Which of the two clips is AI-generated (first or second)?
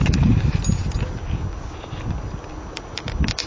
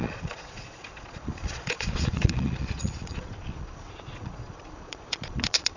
second